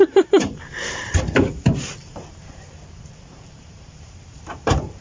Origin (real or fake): fake